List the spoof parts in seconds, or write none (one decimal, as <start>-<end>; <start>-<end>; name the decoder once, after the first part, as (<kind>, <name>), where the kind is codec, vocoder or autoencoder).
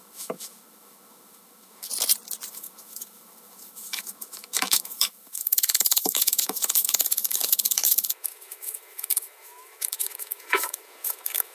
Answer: 0.0-1.9 (autoencoder, DAC-VAE); 2.5-11.5